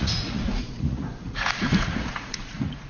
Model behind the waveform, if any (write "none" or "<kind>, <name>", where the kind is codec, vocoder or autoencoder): vocoder, Vocos